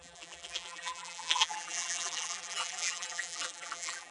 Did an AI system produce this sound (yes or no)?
yes